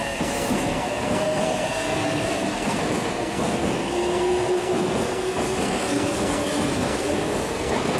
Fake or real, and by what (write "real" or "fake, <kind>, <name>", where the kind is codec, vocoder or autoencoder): fake, codec, SNAC